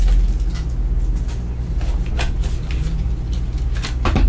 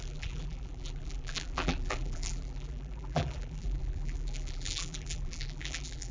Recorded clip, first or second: first